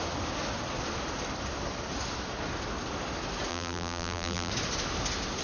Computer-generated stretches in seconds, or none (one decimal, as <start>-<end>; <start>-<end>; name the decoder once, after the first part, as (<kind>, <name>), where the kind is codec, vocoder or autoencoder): 3.5-4.5 (vocoder, BigVGAN v2)